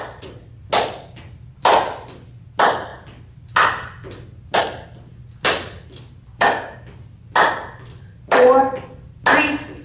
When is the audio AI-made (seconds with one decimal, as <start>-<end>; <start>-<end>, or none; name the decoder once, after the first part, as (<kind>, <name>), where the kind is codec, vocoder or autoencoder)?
6.3-6.9 (codec, DAC)